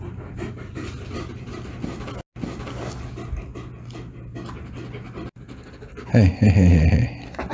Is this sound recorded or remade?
recorded